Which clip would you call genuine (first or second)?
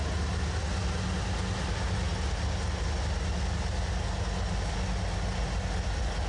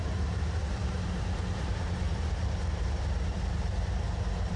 first